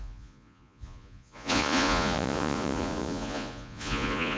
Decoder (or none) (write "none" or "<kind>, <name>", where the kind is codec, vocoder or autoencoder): vocoder, Vocos